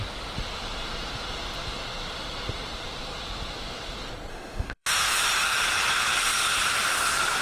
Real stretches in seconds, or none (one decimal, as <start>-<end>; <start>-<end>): 0.0-4.3; 5.1-7.4